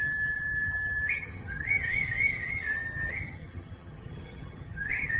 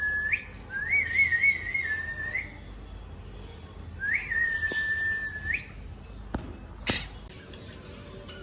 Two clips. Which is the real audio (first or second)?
second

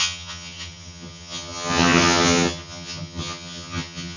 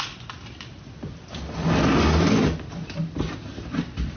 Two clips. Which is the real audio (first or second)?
second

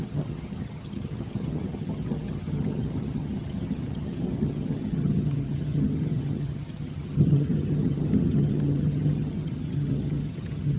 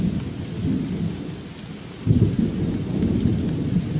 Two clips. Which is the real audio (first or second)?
second